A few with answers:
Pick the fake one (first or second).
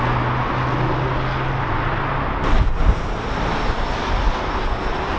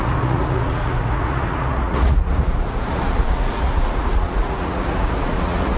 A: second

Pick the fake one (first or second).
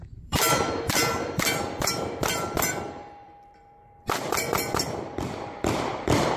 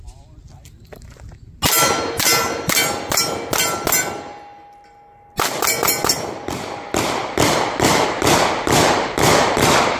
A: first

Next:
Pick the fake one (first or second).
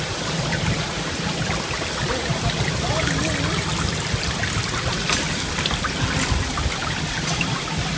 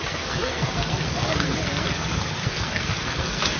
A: second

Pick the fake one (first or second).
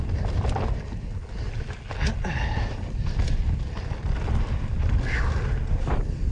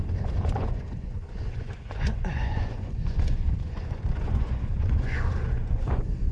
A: second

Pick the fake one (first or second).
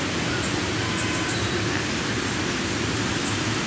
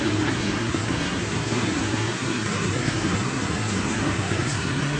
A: second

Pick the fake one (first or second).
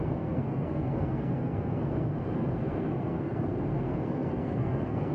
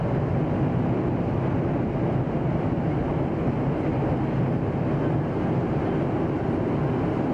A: first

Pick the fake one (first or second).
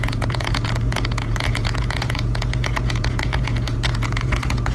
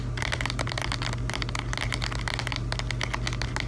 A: first